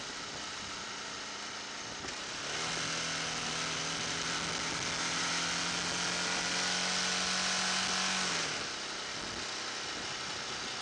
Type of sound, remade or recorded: recorded